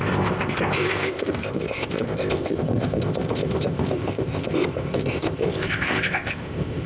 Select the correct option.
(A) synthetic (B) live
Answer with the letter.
A